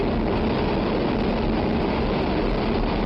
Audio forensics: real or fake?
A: real